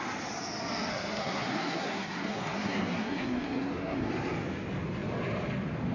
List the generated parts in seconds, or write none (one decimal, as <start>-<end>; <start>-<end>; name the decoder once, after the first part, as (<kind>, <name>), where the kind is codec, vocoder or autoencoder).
0.9-4.1 (codec, SNAC)